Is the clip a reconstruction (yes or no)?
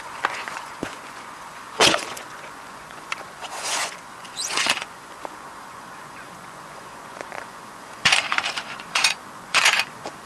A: yes